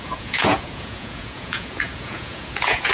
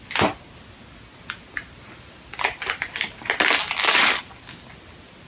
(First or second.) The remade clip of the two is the first